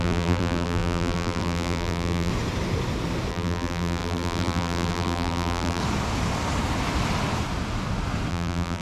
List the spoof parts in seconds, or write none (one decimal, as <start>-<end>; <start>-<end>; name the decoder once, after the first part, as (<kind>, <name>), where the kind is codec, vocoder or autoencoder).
0.0-2.3 (vocoder, BigVGAN v2); 3.3-5.8; 8.3-8.8